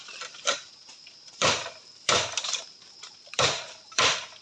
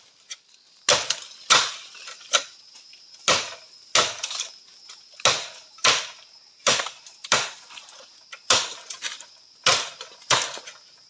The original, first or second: second